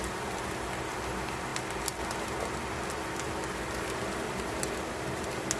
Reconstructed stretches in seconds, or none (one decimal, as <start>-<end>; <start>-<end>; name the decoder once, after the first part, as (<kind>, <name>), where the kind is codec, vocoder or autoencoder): none